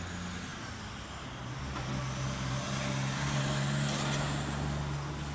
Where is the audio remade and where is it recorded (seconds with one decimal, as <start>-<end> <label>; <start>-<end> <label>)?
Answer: 0.0-5.3 recorded